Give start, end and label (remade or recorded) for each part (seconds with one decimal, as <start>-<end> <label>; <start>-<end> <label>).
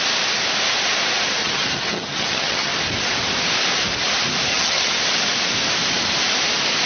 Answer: 0.0-1.4 recorded; 1.4-2.7 remade; 2.7-4.5 recorded; 4.5-5.0 remade; 5.0-6.9 recorded